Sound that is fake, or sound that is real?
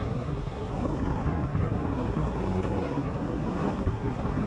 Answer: fake